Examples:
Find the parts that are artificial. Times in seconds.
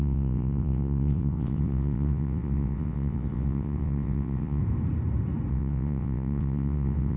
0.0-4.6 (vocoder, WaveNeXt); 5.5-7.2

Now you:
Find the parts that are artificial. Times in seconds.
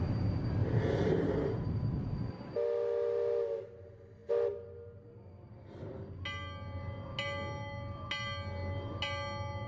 0.6-1.3 (vocoder, BigVGAN v2)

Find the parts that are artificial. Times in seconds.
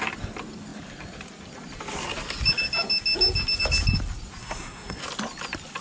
4.4-5.0 (codec, SNAC)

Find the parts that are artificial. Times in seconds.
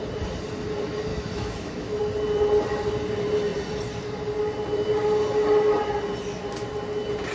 1.1-2.0 (autoencoder, DAC-VAE)